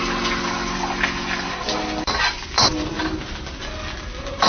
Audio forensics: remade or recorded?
recorded